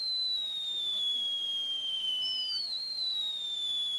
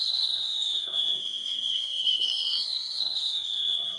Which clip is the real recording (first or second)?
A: first